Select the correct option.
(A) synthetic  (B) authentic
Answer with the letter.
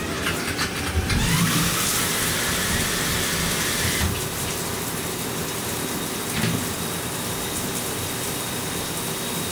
B